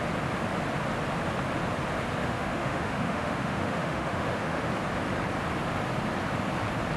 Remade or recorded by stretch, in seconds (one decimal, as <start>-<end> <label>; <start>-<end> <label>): 0.0-2.2 recorded; 2.2-4.7 remade; 4.7-7.0 recorded